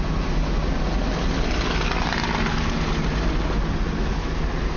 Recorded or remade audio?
recorded